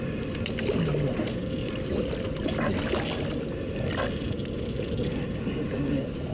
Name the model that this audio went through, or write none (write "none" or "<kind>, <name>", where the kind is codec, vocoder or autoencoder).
none